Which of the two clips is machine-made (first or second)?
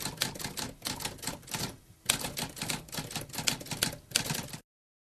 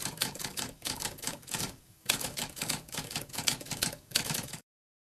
second